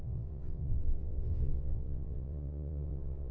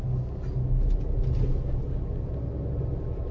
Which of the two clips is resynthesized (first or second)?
first